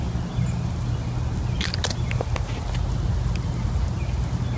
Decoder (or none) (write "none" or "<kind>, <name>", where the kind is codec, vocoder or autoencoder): none